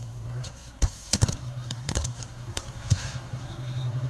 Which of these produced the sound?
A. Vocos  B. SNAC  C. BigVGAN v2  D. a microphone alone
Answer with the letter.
B